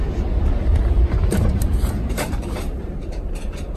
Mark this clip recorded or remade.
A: remade